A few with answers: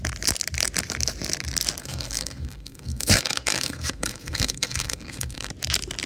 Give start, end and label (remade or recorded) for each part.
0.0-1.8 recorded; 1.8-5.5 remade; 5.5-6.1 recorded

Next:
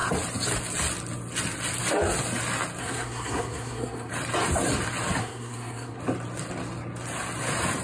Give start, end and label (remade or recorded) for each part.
0.0-2.8 recorded; 2.8-4.1 remade; 4.1-5.2 recorded; 5.2-6.0 remade; 6.0-7.8 recorded